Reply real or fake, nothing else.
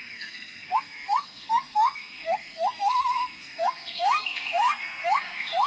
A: fake